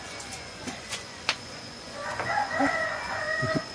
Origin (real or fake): fake